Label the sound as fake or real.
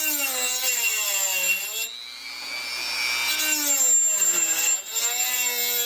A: real